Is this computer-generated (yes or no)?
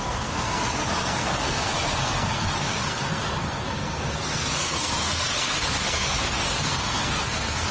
yes